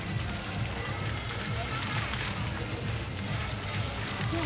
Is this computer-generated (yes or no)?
no